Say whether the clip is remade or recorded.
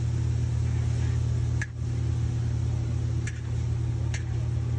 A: recorded